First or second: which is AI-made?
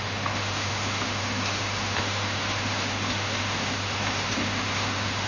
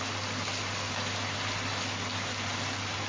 first